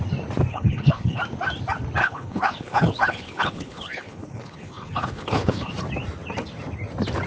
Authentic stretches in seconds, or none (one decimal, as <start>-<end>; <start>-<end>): 0.0-0.5; 1.2-2.0; 5.7-7.3